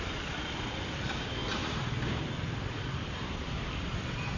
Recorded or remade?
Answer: remade